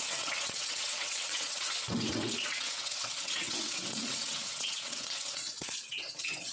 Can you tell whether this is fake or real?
fake